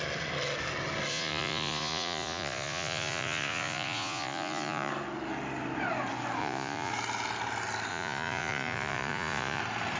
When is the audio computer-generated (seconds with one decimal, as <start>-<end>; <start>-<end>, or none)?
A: 1.1-4.9; 6.4-6.9; 7.9-9.6